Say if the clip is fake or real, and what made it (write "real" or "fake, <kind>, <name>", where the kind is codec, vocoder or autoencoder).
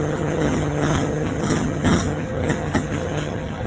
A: fake, vocoder, HiFi-GAN